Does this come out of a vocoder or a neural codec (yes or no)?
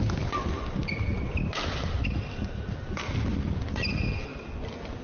no